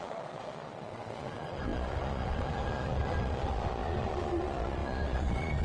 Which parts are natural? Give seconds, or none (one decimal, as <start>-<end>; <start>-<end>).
none